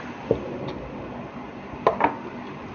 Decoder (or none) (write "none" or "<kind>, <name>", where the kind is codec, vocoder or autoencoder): none